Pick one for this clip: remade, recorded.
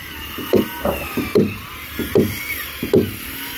recorded